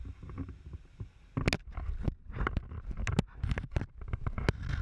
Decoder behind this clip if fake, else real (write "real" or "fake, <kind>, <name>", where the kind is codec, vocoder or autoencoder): real